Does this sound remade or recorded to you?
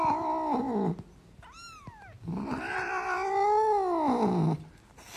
recorded